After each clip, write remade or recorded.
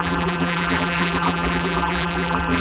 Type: remade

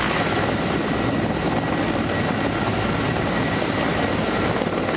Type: recorded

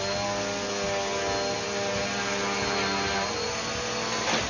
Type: recorded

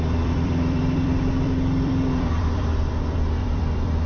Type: remade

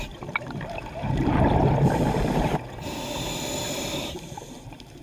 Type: remade